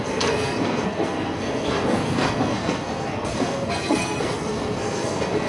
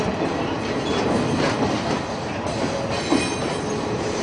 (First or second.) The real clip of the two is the second